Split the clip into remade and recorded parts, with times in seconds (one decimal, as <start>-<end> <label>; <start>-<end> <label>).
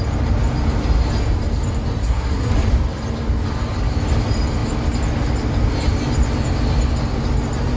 0.0-2.0 recorded; 2.0-2.5 remade; 2.5-7.8 recorded